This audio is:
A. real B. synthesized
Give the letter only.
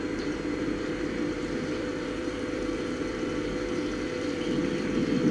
B